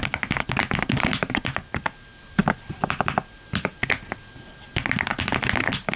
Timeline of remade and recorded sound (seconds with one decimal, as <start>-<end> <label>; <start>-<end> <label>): 0.0-6.0 recorded